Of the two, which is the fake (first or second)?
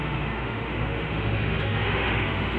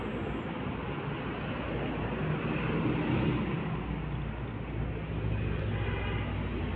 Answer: first